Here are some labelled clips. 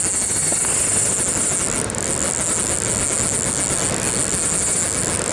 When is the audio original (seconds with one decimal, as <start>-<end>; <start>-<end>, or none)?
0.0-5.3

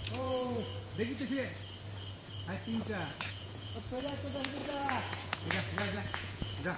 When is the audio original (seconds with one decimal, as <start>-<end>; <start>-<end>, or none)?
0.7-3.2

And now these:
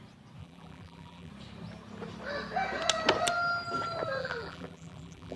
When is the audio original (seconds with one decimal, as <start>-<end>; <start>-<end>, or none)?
0.0-0.4; 1.3-4.2

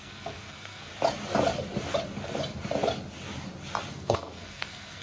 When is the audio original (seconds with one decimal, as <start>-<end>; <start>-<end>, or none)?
0.9-3.9

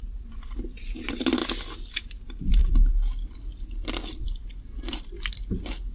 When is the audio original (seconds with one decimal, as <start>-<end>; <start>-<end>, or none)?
1.4-2.2; 2.6-5.9